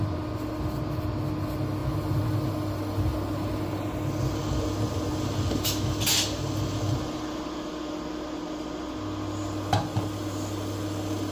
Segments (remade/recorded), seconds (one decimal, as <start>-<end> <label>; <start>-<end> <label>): 0.0-11.3 recorded